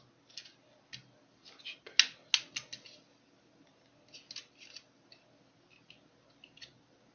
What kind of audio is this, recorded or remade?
recorded